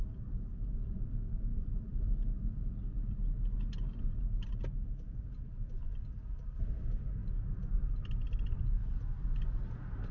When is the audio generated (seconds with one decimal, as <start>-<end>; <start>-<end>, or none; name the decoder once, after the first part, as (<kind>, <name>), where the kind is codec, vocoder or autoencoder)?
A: none